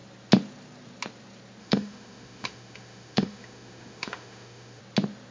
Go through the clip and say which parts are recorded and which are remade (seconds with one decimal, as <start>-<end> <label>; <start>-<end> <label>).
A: 0.0-1.6 recorded; 1.6-4.8 remade; 4.8-5.3 recorded